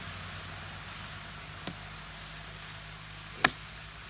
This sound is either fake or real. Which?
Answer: real